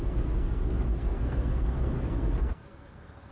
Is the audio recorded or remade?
remade